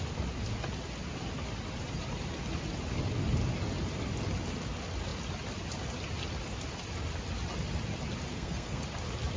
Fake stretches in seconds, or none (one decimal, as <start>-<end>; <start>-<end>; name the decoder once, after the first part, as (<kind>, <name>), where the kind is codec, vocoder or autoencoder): 8.3-8.8 (codec, SNAC)